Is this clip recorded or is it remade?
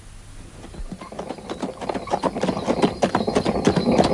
recorded